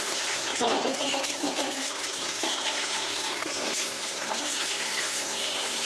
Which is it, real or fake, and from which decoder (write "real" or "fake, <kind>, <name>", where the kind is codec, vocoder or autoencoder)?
fake, codec, SNAC